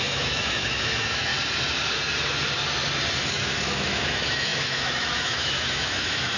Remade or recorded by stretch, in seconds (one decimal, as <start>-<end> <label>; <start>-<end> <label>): 0.0-1.3 remade; 1.3-3.3 recorded; 3.3-6.4 remade